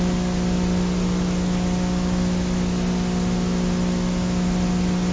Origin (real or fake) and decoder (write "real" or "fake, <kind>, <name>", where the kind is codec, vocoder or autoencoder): real